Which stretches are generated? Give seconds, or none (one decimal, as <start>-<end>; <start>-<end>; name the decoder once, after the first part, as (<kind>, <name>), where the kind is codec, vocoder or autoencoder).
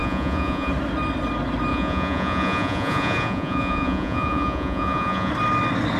0.0-0.7 (vocoder, Vocos); 1.7-5.3